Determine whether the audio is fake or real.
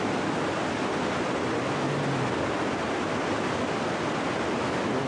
real